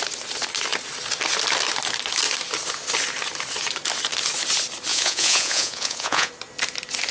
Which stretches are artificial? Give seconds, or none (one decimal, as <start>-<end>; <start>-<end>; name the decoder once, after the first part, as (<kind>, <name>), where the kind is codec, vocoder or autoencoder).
4.9-6.3 (vocoder, Vocos)